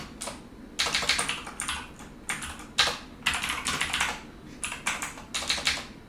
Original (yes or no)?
yes